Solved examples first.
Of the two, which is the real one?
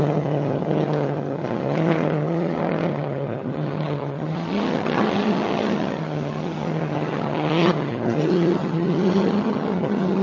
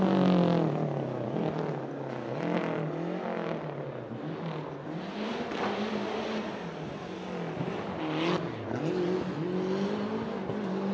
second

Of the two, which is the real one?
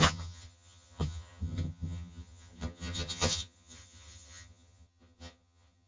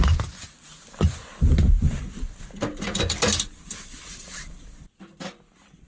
second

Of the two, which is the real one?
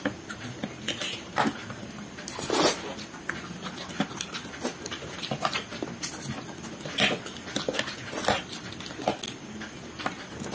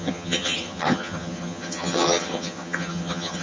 first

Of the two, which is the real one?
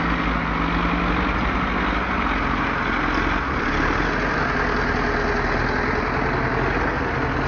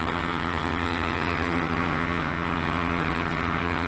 first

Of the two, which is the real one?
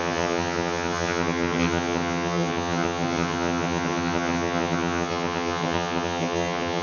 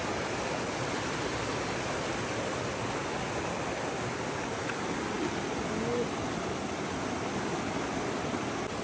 second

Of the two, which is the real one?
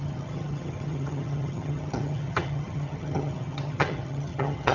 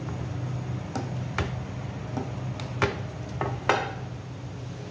second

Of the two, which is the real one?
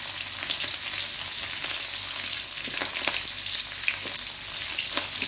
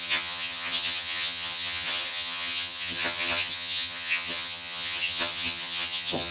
first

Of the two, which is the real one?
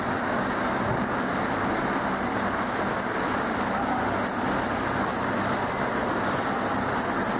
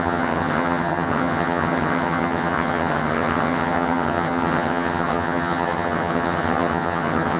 first